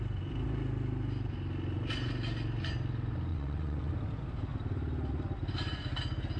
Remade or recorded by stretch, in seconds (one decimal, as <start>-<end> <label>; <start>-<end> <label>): 0.0-3.3 recorded; 3.3-3.9 remade; 3.9-6.4 recorded